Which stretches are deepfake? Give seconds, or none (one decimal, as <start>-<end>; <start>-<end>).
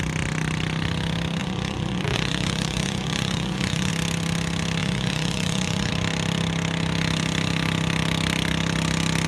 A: 1.4-3.9; 4.8-5.9